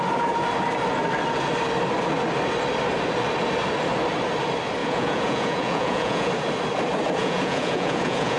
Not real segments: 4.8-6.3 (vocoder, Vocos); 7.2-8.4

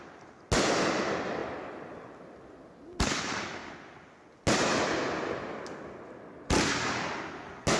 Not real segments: none

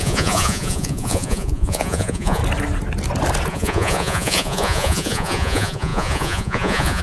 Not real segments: 0.0-2.4 (vocoder, Vocos); 3.5-7.0

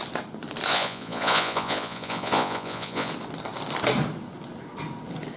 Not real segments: 0.7-3.1 (vocoder, Vocos)

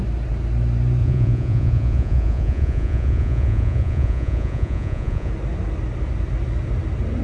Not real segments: 1.0-5.3 (vocoder, Vocos)

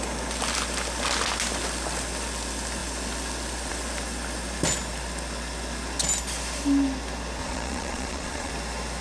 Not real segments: 7.4-8.5 (vocoder, Vocos)

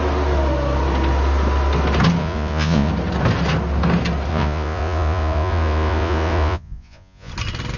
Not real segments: 2.2-2.9 (vocoder, Vocos); 4.3-7.3